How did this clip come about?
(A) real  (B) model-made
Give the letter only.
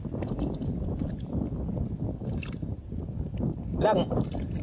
A